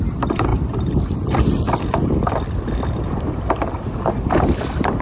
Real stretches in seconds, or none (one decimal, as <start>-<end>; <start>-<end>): 0.0-5.0